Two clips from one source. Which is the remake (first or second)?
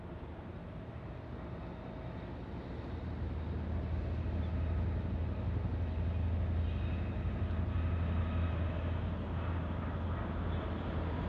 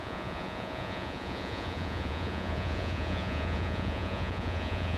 second